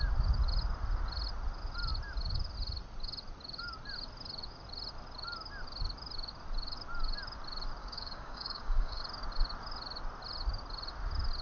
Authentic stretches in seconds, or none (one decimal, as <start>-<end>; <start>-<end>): 0.0-7.8; 9.0-11.4